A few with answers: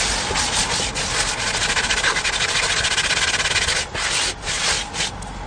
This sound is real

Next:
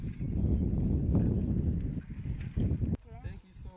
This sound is real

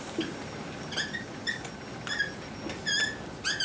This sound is real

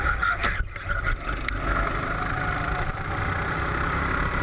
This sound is real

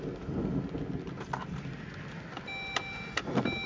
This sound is real